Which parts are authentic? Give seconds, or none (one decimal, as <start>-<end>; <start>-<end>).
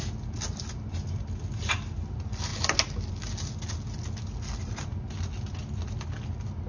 0.0-6.7